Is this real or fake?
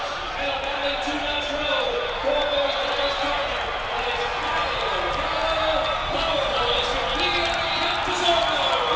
real